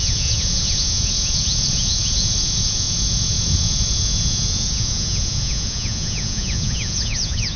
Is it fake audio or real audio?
fake